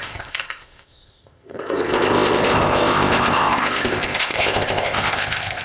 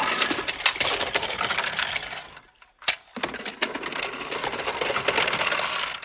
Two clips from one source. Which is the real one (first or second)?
second